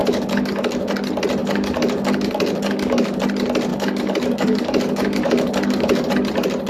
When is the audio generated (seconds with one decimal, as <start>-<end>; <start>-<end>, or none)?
0.0-0.9; 1.4-3.2; 3.7-6.1